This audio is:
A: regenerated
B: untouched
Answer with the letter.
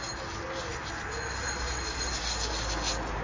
B